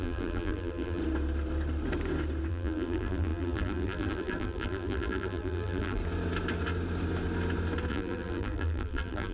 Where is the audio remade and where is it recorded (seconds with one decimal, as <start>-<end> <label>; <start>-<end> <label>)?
0.0-1.0 remade; 1.0-2.5 recorded; 2.5-6.0 remade; 6.0-7.9 recorded; 7.9-9.3 remade